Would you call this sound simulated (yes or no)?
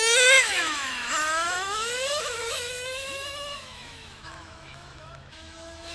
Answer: yes